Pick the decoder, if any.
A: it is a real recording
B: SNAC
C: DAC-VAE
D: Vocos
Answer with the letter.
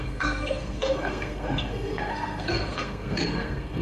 B